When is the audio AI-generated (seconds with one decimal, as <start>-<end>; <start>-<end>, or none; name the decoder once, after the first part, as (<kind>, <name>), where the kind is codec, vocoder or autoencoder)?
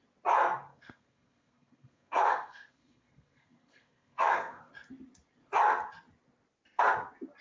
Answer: 0.7-4.7 (codec, SNAC)